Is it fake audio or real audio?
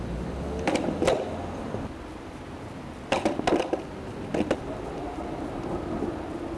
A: real